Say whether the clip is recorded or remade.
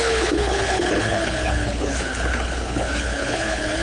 remade